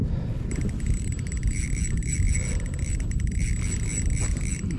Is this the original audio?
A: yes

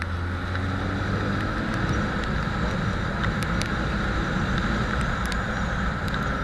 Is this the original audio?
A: yes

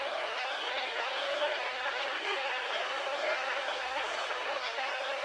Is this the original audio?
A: no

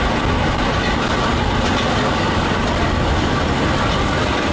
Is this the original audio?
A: yes